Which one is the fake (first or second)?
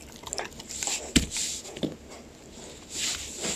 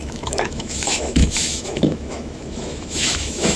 second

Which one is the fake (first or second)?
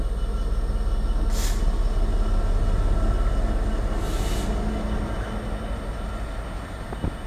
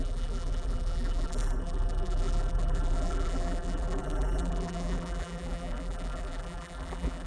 second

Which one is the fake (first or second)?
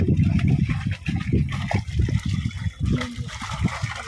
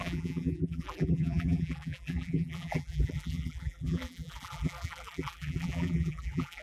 second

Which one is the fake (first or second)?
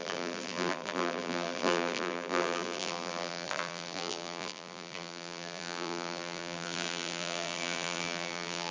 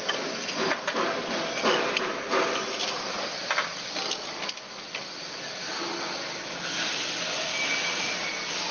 first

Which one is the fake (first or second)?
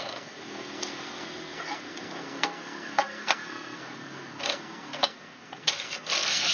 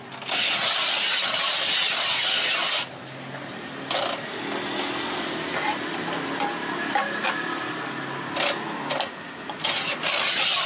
first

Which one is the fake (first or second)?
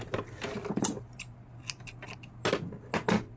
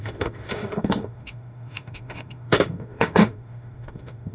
second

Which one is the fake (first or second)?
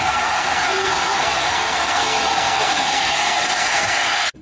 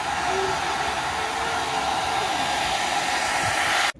first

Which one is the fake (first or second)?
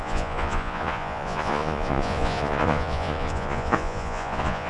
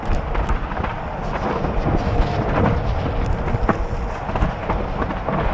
first